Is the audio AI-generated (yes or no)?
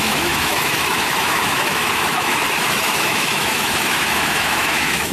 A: yes